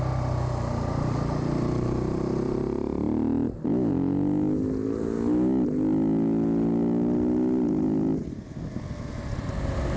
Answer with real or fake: real